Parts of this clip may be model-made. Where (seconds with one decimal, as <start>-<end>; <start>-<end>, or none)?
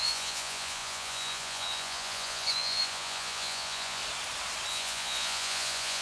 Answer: 0.0-4.0; 4.7-6.0